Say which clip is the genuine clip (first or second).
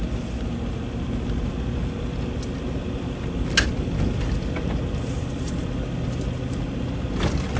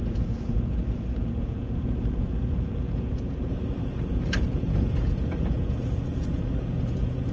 first